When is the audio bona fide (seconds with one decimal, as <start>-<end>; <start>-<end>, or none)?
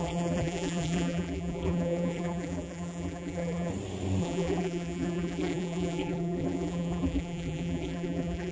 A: 3.7-4.2